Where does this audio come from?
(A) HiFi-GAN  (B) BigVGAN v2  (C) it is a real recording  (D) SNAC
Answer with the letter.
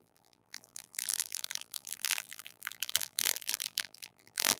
B